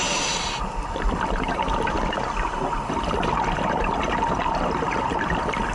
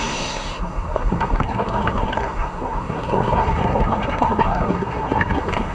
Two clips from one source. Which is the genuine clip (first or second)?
first